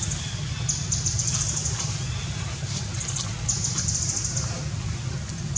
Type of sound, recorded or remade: recorded